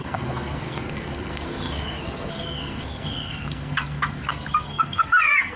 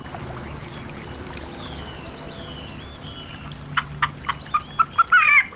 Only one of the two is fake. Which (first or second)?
first